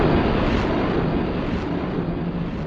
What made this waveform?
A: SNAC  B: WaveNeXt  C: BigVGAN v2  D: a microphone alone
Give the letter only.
D